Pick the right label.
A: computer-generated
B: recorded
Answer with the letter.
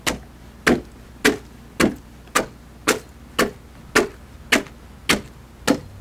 B